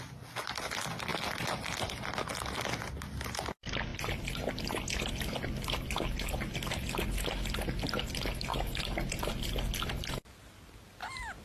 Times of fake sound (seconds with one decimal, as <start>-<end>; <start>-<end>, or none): none